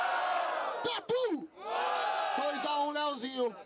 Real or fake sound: real